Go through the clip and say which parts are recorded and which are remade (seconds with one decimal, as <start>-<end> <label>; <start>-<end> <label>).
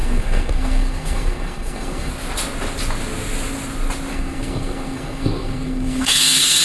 0.0-2.1 remade; 2.1-4.1 recorded; 4.1-6.6 remade